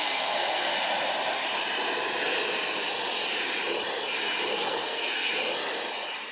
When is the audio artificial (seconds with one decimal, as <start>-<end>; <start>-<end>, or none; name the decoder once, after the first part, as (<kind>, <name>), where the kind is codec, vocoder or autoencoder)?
0.0-0.7 (codec, SNAC); 4.5-5.3